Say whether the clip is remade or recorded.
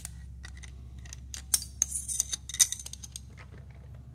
recorded